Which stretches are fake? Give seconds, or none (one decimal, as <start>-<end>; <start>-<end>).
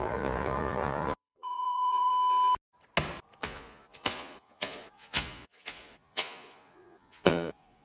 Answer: 0.0-2.1; 3.4-7.8